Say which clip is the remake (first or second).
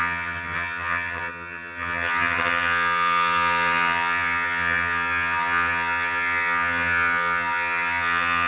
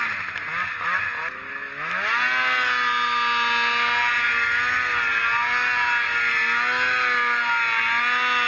first